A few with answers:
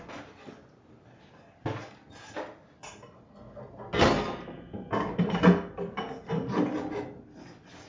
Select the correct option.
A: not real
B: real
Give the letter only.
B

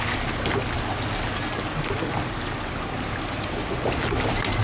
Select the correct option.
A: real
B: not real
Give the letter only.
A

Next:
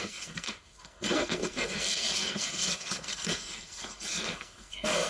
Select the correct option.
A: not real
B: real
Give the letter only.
A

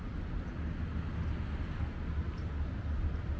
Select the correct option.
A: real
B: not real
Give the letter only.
A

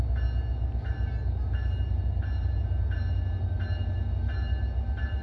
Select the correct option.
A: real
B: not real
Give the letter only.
A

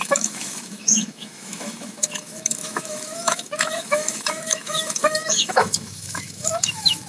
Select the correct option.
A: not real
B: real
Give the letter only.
A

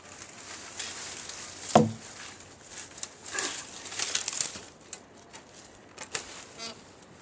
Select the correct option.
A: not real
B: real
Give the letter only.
B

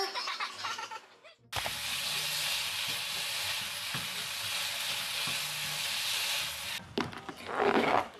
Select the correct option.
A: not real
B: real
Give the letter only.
B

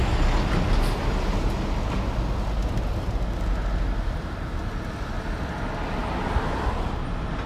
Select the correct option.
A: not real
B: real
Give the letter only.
B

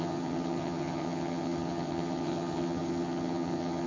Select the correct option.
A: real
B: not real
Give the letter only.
B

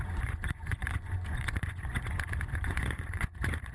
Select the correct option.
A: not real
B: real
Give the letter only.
A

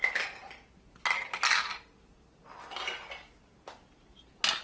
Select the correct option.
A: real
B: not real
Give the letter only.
A